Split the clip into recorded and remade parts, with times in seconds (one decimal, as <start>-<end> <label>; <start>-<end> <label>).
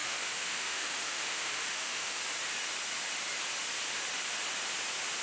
0.0-2.2 remade; 2.2-5.2 recorded